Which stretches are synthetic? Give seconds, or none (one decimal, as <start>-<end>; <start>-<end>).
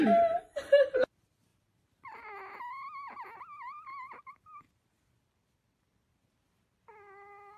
none